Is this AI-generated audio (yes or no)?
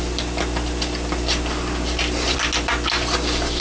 no